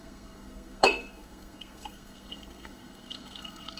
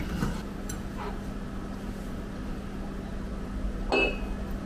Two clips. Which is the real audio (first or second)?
second